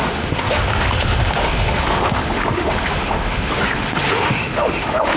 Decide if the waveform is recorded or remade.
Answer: remade